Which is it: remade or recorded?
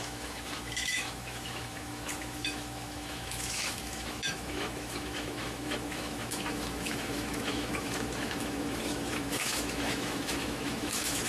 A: remade